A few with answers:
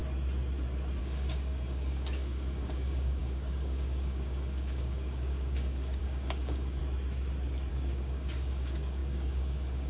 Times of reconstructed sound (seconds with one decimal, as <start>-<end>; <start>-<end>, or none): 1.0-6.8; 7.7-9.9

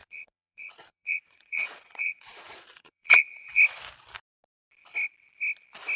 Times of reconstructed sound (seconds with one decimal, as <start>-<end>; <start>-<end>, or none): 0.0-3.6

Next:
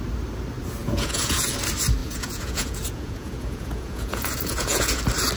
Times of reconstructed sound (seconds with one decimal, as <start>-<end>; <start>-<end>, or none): 0.8-1.5; 2.0-5.0

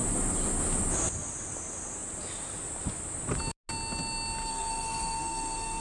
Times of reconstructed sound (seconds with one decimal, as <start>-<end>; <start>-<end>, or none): 4.5-5.8

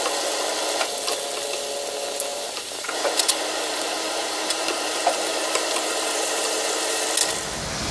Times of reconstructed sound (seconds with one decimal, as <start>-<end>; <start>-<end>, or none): 2.3-7.0